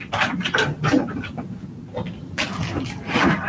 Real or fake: real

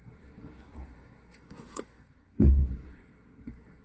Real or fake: fake